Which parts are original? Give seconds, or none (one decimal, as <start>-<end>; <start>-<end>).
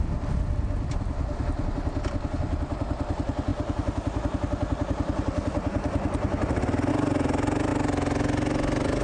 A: 0.0-9.0